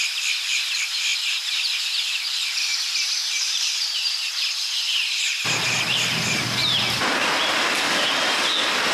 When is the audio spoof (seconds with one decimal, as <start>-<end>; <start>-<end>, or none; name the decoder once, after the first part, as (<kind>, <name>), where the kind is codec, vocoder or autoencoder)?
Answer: 3.2-5.6 (vocoder, BigVGAN v2)